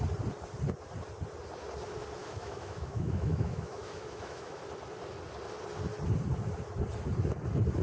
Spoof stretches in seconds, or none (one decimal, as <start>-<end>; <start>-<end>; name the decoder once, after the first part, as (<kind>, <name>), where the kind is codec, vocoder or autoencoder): 2.2-4.6 (autoencoder, DAC-VAE)